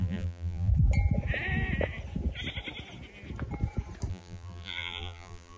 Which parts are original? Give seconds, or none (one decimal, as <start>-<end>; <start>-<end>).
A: 0.7-4.1